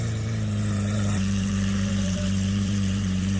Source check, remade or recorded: remade